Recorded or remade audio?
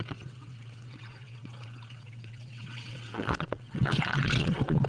remade